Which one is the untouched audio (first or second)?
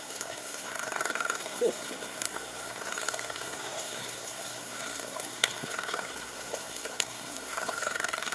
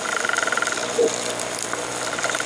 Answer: second